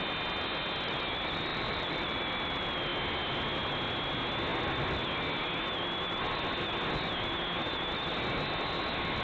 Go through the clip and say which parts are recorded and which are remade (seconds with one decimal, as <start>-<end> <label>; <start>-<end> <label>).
0.0-1.5 recorded; 1.5-2.2 remade; 2.2-9.2 recorded